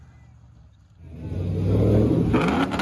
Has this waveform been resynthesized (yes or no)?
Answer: no